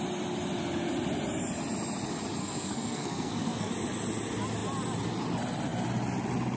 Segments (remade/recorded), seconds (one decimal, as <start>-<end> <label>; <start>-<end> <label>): 0.0-2.4 recorded; 2.4-3.7 remade; 3.7-6.6 recorded